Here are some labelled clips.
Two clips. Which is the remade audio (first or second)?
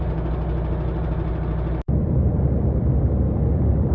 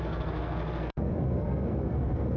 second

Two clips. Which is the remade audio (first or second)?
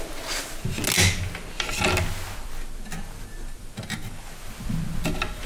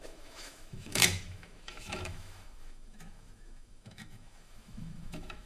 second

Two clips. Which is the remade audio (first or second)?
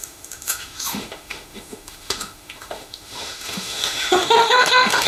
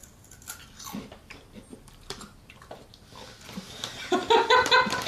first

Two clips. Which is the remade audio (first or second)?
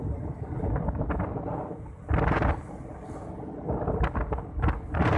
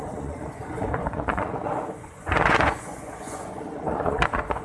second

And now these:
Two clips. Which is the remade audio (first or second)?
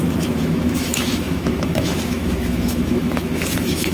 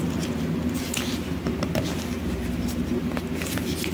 first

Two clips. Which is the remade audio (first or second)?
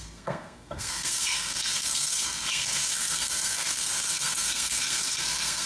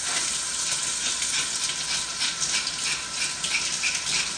first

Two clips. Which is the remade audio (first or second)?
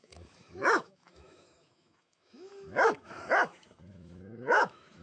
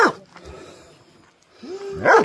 first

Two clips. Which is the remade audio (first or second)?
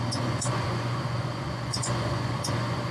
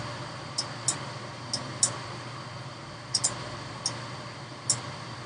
first